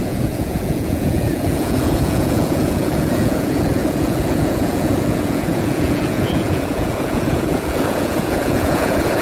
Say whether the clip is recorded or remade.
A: remade